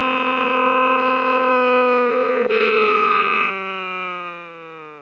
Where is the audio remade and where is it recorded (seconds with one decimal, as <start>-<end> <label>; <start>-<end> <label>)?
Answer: 0.0-1.5 remade; 1.5-2.1 recorded; 2.1-3.5 remade; 3.5-5.0 recorded